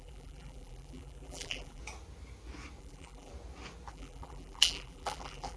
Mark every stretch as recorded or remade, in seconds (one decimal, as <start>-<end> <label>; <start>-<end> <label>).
0.0-1.8 remade; 1.8-2.8 recorded; 2.8-3.3 remade; 3.3-3.9 recorded; 3.9-5.6 remade